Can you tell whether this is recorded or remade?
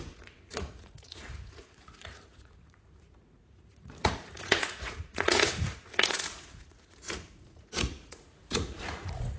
remade